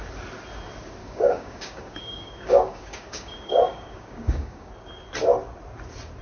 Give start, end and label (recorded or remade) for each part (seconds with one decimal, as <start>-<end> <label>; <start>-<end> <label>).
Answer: 0.0-1.0 recorded; 1.0-4.7 remade; 4.7-6.2 recorded